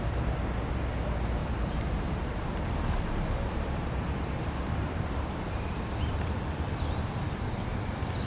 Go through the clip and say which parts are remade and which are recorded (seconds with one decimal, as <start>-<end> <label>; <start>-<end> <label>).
0.0-1.4 recorded; 1.4-6.4 remade; 6.4-8.3 recorded

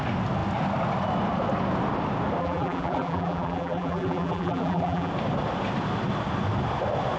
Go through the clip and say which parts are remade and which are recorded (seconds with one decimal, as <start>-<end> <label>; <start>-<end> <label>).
0.0-2.4 recorded; 2.4-5.1 remade; 5.1-7.2 recorded